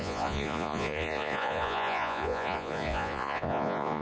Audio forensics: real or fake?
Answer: fake